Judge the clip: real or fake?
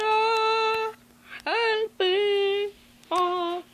real